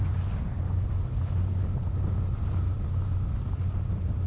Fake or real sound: real